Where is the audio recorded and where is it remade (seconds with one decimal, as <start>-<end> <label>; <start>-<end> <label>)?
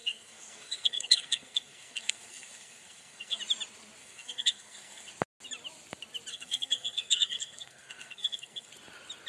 0.0-3.4 remade; 3.4-4.0 recorded; 4.0-5.1 remade; 5.1-6.3 recorded; 6.3-8.7 remade; 8.7-9.3 recorded